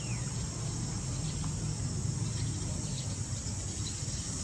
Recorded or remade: recorded